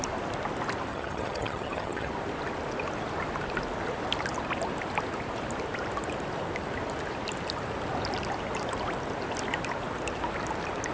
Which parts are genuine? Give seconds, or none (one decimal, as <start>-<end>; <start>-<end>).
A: 0.0-0.9; 2.1-10.9